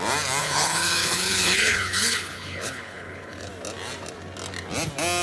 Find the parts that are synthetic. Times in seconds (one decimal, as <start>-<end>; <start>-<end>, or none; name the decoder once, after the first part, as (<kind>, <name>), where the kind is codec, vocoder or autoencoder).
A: 0.4-3.5 (codec, HILCodec)